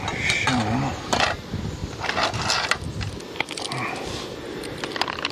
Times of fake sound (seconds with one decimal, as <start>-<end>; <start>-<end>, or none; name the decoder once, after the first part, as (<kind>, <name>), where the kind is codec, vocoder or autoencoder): none